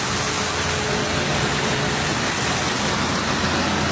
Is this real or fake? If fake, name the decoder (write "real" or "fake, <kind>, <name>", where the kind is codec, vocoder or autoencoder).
real